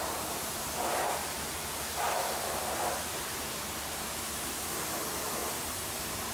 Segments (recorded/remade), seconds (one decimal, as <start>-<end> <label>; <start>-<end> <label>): 0.0-1.2 recorded; 1.2-5.0 remade; 5.0-6.3 recorded